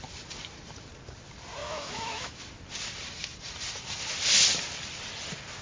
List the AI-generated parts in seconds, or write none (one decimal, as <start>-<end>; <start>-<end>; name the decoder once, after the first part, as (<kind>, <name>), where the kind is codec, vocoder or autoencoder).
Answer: 1.6-2.4 (autoencoder, DAC-VAE)